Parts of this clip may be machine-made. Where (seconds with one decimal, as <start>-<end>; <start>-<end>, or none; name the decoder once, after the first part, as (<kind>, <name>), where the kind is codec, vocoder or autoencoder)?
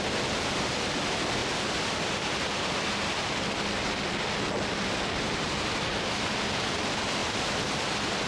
7.2-7.8 (vocoder, BigVGAN v2)